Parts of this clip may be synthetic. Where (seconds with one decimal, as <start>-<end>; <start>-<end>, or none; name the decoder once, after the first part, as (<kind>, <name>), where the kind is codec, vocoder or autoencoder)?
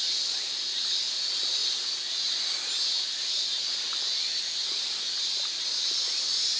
none